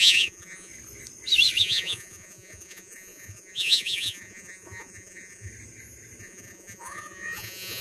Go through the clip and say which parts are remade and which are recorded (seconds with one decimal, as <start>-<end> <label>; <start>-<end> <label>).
0.0-0.7 remade; 0.7-1.6 recorded; 1.6-5.5 remade; 5.5-6.2 recorded; 6.2-7.8 remade